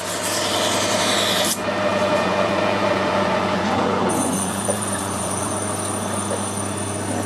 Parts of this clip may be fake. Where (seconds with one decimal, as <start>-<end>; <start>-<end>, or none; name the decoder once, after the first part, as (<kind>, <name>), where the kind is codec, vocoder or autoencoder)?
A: 1.9-5.5 (vocoder, Vocos)